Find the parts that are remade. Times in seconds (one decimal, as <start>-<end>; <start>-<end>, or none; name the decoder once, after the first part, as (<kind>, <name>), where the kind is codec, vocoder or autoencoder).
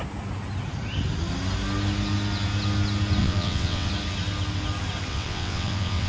3.2-3.9 (vocoder, WaveNeXt); 5.1-6.1